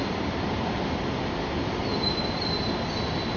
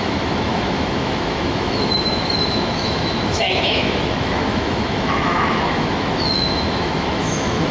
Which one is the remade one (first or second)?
second